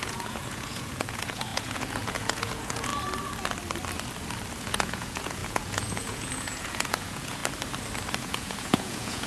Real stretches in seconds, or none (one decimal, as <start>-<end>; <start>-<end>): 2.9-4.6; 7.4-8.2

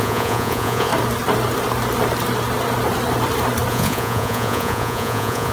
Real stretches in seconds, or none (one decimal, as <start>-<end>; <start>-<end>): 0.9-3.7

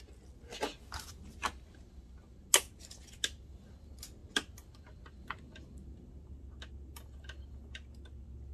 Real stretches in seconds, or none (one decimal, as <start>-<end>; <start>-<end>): 0.0-8.5

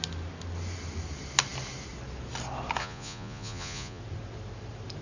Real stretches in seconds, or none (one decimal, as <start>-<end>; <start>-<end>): 0.0-2.8; 4.0-5.0

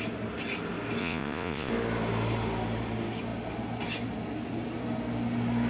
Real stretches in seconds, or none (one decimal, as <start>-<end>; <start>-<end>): 0.0-1.0; 1.7-5.7

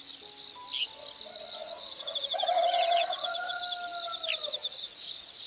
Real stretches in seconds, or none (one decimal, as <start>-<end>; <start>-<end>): 0.0-1.6; 3.6-4.6

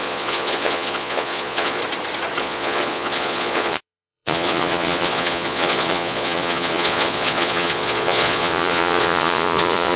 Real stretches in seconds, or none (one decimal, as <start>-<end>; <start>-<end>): 1.8-2.4

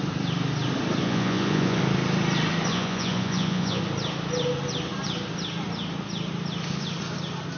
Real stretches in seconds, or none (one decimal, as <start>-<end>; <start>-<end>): 0.0-1.0; 1.8-2.7; 3.8-7.6